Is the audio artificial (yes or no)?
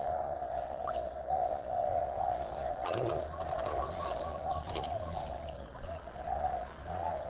yes